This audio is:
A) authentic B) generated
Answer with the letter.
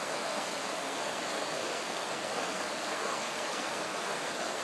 B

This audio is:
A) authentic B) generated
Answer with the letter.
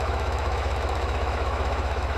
B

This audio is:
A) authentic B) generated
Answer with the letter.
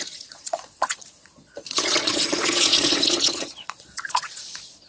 B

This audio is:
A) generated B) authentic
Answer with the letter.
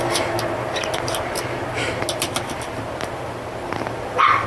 B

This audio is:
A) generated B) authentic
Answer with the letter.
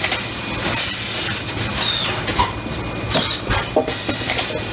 B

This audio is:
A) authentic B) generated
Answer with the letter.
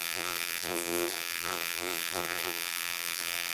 B